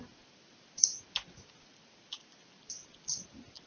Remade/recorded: recorded